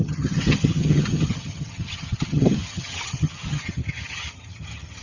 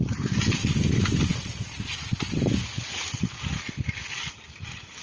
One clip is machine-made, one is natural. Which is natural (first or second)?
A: second